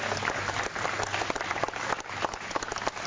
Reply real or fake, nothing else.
real